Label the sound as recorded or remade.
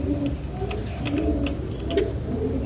recorded